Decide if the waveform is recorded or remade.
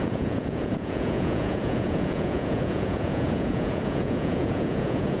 remade